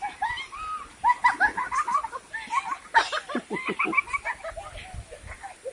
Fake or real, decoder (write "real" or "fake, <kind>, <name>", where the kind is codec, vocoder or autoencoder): real